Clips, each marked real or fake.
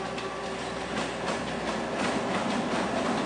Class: real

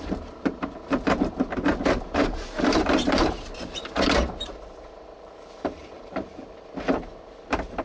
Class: fake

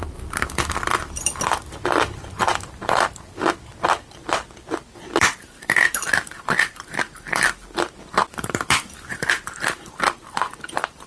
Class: fake